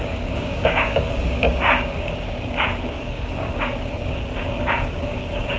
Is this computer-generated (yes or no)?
yes